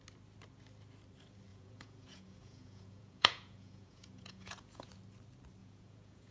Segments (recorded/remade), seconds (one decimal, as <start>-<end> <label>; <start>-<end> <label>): 0.0-1.5 recorded; 1.5-4.9 remade; 4.9-5.6 recorded; 5.6-6.3 remade